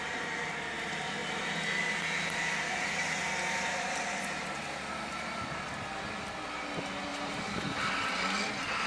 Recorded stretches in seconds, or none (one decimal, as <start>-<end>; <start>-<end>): 0.0-7.1; 7.9-8.9